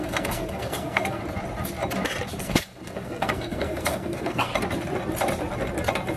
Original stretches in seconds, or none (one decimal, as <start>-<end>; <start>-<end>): 1.2-2.4; 4.5-6.2